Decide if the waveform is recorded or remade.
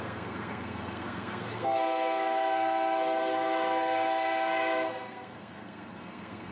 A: remade